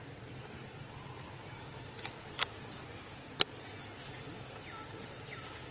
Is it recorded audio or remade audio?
recorded